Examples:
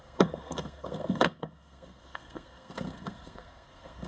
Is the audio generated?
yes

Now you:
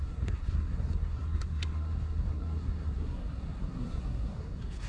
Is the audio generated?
yes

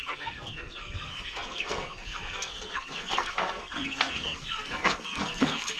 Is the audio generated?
yes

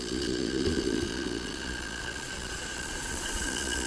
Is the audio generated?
yes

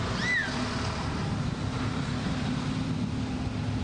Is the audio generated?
no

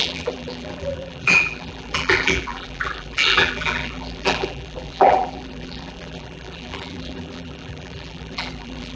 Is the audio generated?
yes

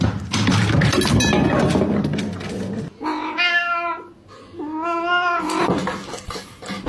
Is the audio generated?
no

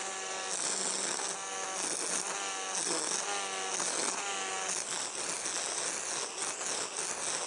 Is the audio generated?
no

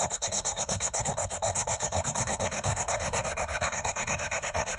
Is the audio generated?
yes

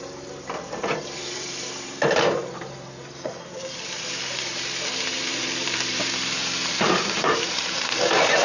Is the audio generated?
yes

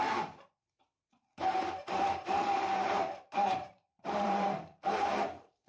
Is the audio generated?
yes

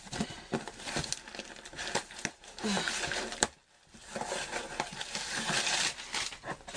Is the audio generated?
no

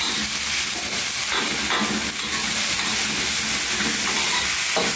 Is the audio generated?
no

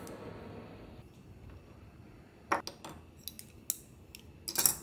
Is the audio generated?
no